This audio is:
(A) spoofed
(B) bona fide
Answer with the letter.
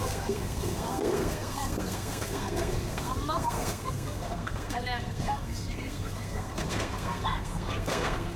A